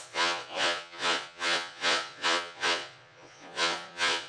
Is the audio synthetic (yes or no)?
yes